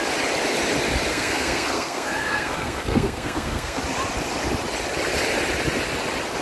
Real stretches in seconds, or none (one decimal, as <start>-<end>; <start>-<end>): 0.0-1.1; 3.8-6.4